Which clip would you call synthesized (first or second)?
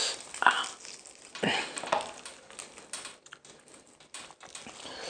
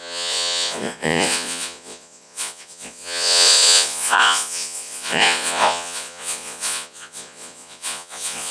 second